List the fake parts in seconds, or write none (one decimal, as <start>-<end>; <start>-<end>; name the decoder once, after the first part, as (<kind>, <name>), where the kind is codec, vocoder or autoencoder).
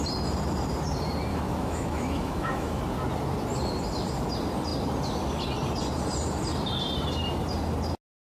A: 1.3-2.8 (autoencoder, DAC-VAE)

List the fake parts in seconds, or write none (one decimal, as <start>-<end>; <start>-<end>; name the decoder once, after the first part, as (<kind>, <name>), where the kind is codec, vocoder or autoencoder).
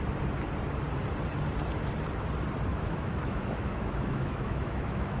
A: 2.7-5.2 (autoencoder, DAC-VAE)